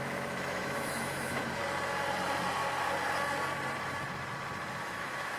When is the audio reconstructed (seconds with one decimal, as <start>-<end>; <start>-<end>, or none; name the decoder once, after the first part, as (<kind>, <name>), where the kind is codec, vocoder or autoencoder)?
0.0-1.6 (autoencoder, DAC-VAE); 4.8-5.4